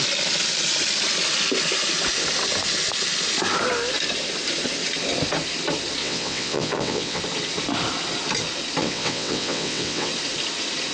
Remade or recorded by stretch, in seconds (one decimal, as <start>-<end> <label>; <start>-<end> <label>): 0.0-6.0 recorded; 6.0-7.2 remade; 7.2-8.8 recorded; 8.8-10.1 remade; 10.1-10.9 recorded